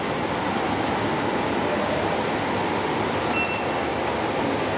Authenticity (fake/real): real